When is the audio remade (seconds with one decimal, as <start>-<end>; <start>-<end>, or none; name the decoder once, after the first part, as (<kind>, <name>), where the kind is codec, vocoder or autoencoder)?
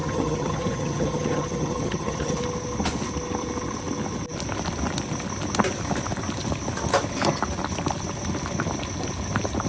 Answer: 0.0-2.4 (vocoder, HiFi-GAN)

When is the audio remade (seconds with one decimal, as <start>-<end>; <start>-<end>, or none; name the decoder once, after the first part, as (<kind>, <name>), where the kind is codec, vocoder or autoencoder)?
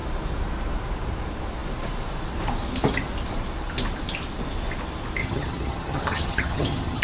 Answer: 5.2-7.0 (vocoder, HiFi-GAN)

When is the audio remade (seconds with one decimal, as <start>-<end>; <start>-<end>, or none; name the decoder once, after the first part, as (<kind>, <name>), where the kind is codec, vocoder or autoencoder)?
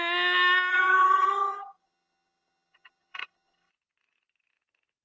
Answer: 0.7-3.7 (vocoder, HiFi-GAN)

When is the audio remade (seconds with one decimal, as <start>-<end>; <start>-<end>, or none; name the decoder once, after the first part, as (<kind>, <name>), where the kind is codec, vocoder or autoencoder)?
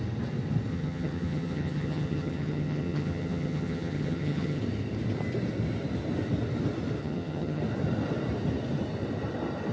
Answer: 0.7-4.6 (vocoder, HiFi-GAN); 7.0-7.6